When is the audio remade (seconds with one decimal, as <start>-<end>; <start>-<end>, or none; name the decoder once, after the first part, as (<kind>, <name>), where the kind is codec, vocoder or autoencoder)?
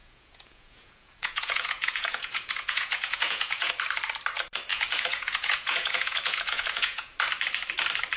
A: 0.0-3.7 (vocoder, Vocos); 4.7-7.2